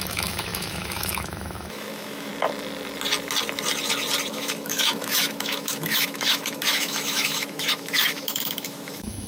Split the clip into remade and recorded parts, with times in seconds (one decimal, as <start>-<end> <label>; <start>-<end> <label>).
0.0-2.3 remade; 2.3-4.3 recorded; 4.3-9.3 remade

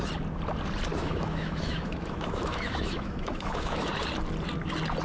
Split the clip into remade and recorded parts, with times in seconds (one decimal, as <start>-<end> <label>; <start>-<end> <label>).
0.0-0.9 recorded; 0.9-3.9 remade; 3.9-5.0 recorded

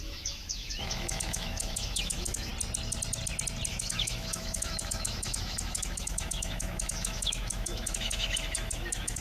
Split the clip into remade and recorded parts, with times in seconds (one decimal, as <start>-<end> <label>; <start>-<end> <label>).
0.0-2.5 remade; 2.5-3.7 recorded; 3.7-9.2 remade

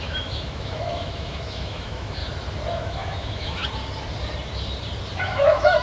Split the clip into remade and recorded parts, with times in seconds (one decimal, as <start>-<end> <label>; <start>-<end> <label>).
0.0-2.2 remade; 2.2-2.7 recorded; 2.7-3.6 remade; 3.6-5.2 recorded; 5.2-5.8 remade